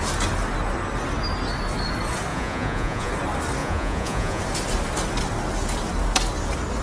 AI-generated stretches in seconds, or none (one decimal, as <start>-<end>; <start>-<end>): 2.3-3.1; 3.6-4.4